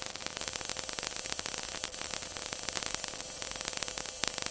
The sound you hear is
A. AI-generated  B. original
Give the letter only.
B